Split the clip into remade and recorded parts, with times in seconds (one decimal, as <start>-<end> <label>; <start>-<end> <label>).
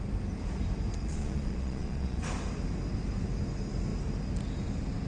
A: 0.0-1.0 recorded; 1.0-2.2 remade; 2.2-5.1 recorded